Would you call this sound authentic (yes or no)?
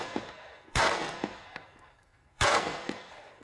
no